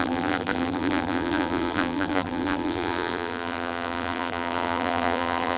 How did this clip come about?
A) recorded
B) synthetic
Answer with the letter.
B